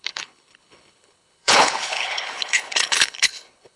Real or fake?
fake